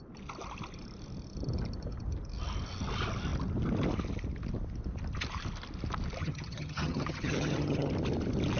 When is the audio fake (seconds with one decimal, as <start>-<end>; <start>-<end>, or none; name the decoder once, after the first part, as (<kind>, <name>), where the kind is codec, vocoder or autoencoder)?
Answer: 6.2-7.9 (vocoder, HiFi-GAN)